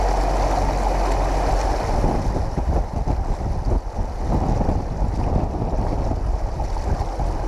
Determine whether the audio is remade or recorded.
recorded